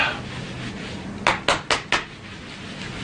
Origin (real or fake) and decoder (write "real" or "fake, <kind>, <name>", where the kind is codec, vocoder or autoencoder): real